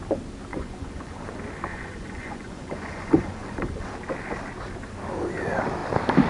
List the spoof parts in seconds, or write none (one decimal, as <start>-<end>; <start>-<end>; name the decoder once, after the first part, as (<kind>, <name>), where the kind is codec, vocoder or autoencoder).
0.5-1.2 (vocoder, Vocos); 1.7-3.9